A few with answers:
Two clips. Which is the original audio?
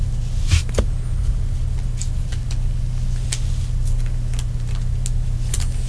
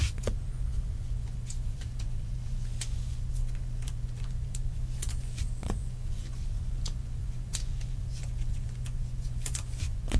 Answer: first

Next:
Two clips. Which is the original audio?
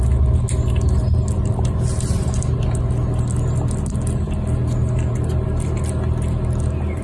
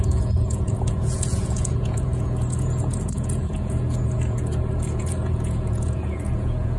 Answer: first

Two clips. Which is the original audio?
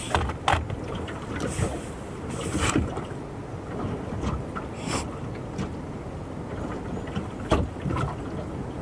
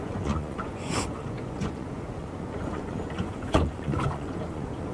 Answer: first